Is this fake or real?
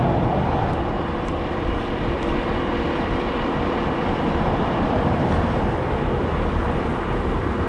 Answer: fake